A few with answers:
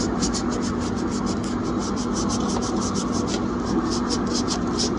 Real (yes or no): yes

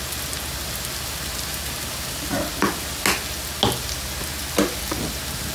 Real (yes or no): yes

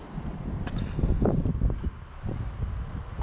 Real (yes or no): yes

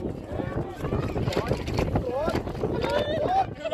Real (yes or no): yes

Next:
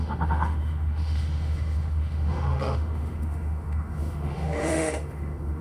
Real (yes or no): no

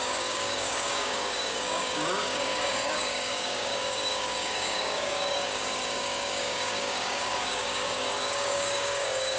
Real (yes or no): no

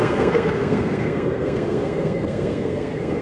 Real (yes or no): no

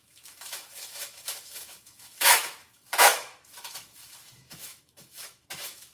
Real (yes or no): no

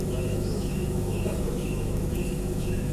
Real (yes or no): no